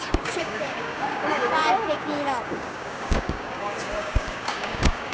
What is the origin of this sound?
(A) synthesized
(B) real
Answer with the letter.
A